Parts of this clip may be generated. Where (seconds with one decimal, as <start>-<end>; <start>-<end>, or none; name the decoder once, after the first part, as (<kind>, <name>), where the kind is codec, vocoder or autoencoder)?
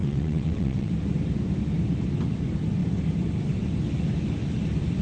0.0-0.9 (vocoder, WaveNeXt)